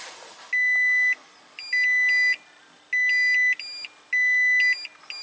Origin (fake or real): real